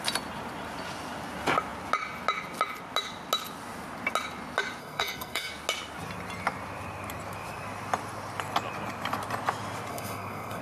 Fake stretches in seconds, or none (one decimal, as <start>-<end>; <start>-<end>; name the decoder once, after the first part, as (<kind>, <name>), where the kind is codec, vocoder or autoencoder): 4.8-5.5 (codec, SNAC); 9.9-10.6